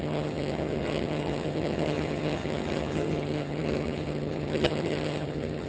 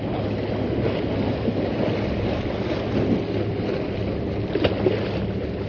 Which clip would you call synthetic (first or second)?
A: first